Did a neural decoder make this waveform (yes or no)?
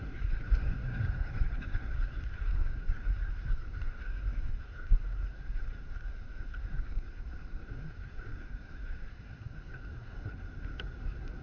yes